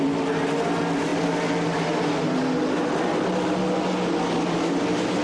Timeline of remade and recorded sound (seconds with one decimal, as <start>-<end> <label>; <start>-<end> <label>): 0.0-5.2 recorded